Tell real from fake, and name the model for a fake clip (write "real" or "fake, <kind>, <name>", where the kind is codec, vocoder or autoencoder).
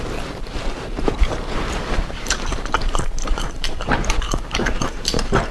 fake, vocoder, BigVGAN v2